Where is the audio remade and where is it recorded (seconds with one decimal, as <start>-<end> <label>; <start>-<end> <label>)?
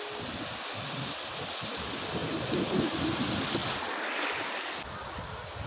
0.0-5.7 recorded